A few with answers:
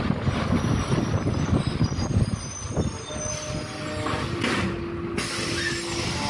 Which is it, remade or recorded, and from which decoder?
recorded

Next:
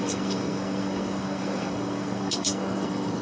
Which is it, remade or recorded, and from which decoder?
remade, codec, SNAC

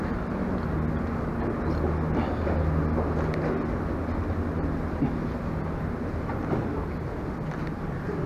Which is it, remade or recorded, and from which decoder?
recorded